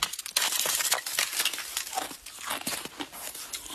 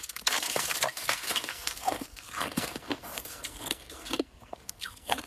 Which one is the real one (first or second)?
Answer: first